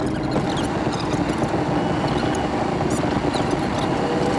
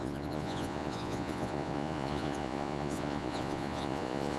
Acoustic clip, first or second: first